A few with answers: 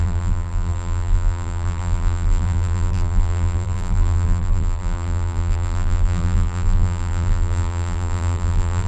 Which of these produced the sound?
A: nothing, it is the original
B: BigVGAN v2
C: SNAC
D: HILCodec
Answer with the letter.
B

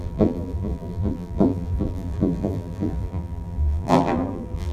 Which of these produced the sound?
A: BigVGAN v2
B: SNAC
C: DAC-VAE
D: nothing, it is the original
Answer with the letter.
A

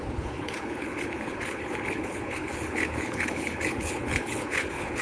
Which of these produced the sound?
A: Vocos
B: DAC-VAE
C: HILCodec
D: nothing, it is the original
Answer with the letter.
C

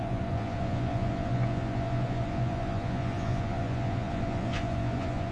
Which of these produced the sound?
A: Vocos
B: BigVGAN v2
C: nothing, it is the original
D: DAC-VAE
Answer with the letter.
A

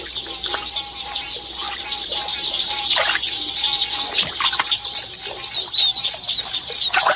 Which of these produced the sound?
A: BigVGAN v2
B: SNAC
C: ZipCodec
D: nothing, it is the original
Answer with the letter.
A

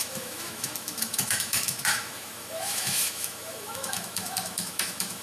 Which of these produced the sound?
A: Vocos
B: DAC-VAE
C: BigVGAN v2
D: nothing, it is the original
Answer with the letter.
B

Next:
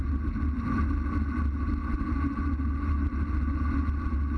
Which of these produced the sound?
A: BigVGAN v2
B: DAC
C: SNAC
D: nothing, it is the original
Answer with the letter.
D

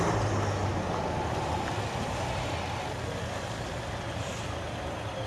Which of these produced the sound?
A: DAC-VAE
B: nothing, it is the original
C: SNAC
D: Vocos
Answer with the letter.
B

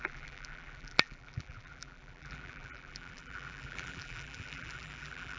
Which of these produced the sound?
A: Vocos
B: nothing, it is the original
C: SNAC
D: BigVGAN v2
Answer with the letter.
D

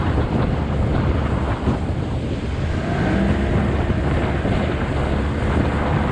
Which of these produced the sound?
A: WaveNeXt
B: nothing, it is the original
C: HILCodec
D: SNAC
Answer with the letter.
B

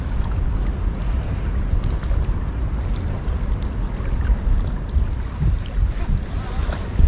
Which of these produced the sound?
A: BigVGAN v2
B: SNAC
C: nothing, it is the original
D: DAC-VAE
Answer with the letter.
C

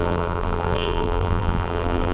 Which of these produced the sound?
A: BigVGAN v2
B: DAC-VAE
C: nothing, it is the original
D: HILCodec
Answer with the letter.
A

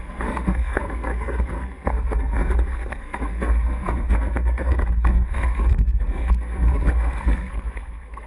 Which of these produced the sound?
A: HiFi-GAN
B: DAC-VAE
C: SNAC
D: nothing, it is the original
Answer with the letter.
C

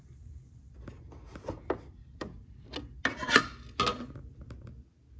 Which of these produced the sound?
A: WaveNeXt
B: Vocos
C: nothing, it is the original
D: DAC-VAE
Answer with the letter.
C